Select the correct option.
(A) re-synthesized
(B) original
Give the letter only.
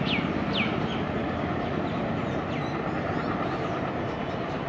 B